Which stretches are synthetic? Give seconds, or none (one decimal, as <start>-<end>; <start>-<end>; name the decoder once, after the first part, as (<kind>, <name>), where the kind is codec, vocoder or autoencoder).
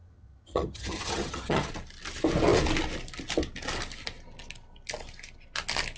0.0-1.7 (vocoder, HiFi-GAN)